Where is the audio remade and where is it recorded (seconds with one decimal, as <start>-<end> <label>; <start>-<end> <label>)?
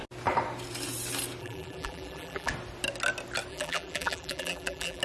0.0-1.4 recorded; 1.4-2.5 remade; 2.5-3.5 recorded; 3.5-5.0 remade